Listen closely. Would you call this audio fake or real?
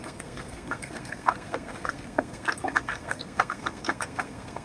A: fake